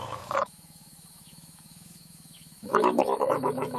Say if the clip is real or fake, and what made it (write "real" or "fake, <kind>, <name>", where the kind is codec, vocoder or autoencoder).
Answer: fake, autoencoder, DAC-VAE